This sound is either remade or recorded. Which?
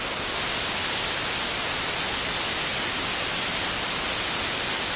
recorded